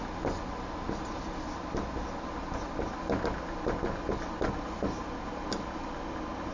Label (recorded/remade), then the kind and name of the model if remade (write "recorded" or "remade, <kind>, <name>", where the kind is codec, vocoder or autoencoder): recorded